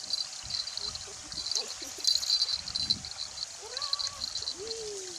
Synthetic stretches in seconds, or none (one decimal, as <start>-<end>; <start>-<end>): none